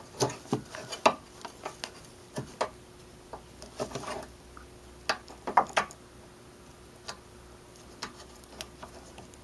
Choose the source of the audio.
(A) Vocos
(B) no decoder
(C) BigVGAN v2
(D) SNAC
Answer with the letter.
B